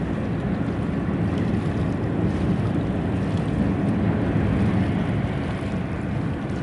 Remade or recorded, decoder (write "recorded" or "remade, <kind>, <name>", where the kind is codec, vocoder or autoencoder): recorded